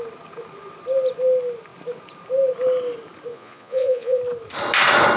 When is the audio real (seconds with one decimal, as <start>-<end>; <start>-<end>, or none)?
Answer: 0.0-3.3; 4.2-5.2